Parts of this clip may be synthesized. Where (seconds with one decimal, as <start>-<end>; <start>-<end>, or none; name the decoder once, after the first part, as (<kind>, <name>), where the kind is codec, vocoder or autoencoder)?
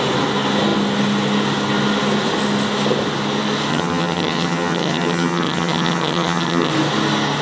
3.7-6.7 (vocoder, HiFi-GAN)